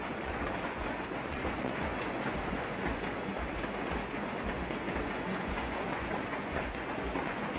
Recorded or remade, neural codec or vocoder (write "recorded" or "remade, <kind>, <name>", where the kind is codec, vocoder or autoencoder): remade, vocoder, Vocos